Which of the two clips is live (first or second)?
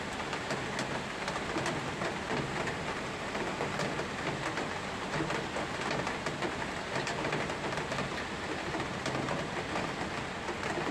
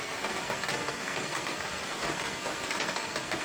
first